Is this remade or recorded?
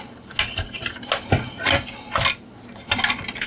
recorded